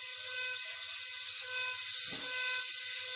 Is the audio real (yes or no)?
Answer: yes